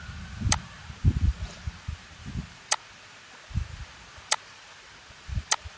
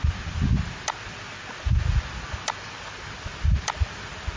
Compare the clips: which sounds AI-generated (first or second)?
first